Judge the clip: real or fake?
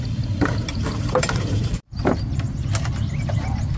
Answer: real